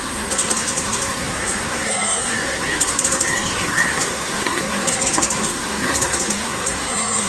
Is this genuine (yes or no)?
no